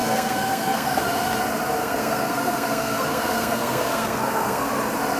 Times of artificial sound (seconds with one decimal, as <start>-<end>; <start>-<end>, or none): 0.0-1.0; 1.8-4.7